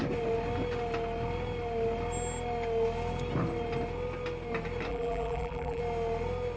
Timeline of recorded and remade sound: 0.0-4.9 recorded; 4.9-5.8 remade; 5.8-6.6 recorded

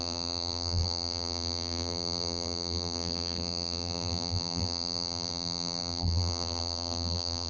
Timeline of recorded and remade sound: 0.0-7.5 remade